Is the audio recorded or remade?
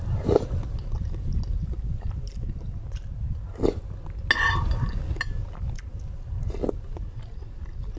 recorded